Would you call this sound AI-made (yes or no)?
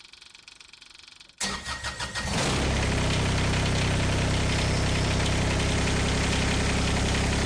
no